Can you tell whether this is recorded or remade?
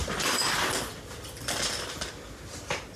recorded